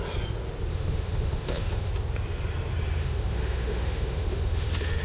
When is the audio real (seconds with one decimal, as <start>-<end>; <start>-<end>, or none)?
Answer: 0.0-0.7; 1.9-3.0

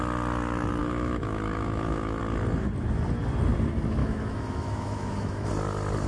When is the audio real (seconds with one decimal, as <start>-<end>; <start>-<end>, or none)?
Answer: 0.0-0.8; 2.2-4.0; 5.5-6.1

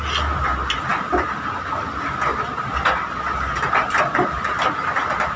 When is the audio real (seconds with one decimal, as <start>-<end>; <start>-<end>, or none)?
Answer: 0.0-5.4

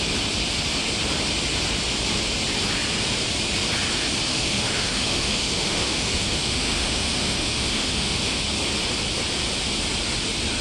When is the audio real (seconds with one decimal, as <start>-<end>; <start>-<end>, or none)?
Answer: 0.0-4.3; 8.4-10.6

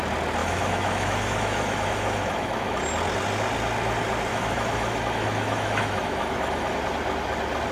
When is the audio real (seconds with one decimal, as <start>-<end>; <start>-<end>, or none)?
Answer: 0.0-0.4; 2.8-4.3; 6.8-7.7

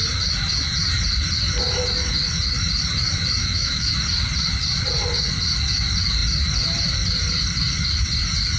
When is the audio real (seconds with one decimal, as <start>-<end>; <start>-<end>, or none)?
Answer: 0.0-3.4; 3.9-8.6

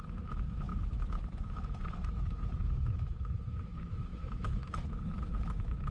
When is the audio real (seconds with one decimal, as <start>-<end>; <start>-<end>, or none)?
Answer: none

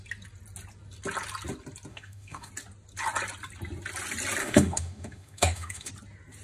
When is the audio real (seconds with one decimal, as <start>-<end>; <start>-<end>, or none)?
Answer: 0.0-1.9; 2.5-4.4; 5.9-6.4